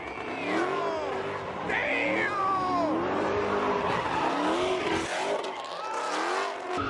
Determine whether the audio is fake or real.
real